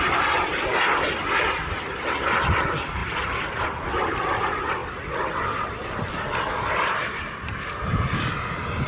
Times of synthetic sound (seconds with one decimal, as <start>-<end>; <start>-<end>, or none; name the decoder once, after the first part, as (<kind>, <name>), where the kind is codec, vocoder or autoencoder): none